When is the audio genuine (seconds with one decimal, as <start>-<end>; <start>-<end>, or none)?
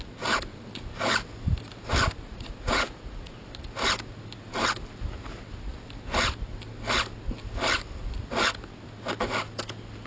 0.0-2.3; 3.4-10.1